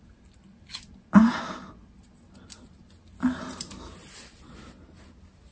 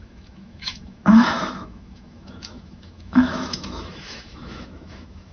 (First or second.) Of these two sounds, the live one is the first